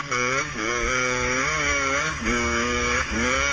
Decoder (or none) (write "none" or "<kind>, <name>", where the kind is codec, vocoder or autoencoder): codec, DAC